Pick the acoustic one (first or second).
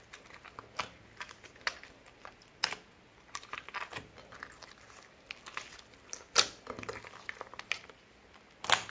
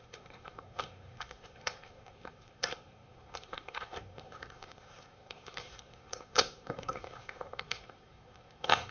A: first